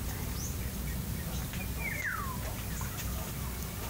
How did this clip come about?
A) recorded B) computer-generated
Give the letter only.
A